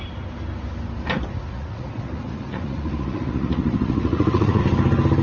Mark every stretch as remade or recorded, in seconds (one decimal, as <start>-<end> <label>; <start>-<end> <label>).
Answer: 0.0-1.5 recorded; 1.5-4.6 remade; 4.6-5.2 recorded

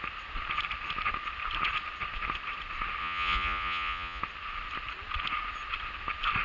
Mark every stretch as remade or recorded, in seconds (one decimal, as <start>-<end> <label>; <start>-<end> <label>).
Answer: 0.0-3.0 recorded; 3.0-4.2 remade; 4.2-6.4 recorded

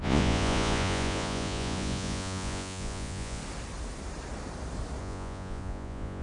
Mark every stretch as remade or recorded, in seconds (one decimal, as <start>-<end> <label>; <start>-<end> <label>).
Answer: 0.0-3.4 remade; 3.4-5.0 recorded; 5.0-6.2 remade

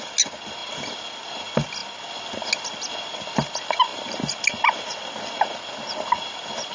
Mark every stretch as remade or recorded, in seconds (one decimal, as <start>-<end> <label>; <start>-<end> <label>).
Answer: 0.0-6.7 recorded

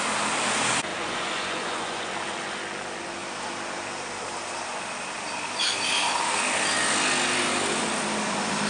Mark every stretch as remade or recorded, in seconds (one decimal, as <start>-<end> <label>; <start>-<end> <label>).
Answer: 0.0-0.9 recorded; 0.9-2.1 remade; 2.1-8.7 recorded

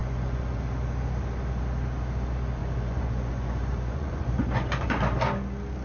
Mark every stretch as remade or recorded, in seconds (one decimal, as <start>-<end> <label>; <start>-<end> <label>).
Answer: 0.0-0.6 remade; 0.6-2.6 recorded; 2.6-5.0 remade; 5.0-5.8 recorded

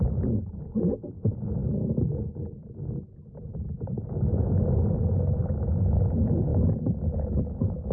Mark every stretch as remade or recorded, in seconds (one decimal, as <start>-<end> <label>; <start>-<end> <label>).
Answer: 0.0-7.9 recorded

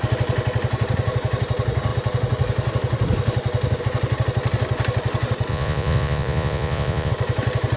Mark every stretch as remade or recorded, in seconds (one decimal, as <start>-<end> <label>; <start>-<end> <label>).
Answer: 0.0-5.5 recorded; 5.5-7.1 remade; 7.1-7.8 recorded